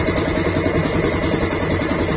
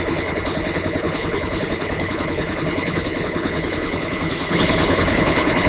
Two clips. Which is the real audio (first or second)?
first